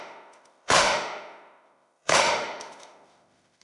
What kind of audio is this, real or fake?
fake